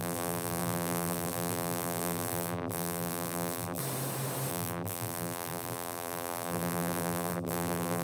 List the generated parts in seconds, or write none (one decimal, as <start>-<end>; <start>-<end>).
0.0-3.8; 4.5-8.0